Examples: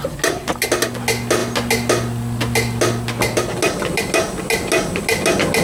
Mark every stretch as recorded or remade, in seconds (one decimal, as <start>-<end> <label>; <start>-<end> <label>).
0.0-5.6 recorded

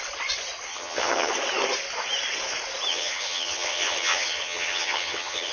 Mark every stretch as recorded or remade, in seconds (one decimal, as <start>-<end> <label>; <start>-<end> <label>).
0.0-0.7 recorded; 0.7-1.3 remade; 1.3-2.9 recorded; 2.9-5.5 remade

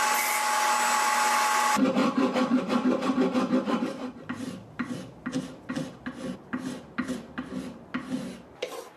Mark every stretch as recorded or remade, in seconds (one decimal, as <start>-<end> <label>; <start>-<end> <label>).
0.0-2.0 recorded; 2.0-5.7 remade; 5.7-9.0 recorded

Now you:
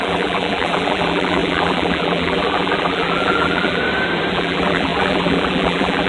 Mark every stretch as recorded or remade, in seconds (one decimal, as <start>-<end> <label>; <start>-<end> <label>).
0.0-3.8 remade; 3.8-4.3 recorded; 4.3-6.1 remade

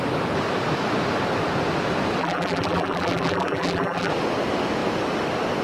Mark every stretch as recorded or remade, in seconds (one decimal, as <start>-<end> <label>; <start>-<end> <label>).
0.0-2.2 recorded; 2.2-4.1 remade; 4.1-5.6 recorded